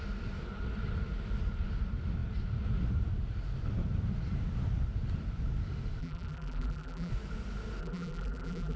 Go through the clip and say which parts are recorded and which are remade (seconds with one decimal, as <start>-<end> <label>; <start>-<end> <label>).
0.0-6.0 recorded; 6.0-7.1 remade; 7.1-7.8 recorded; 7.8-8.8 remade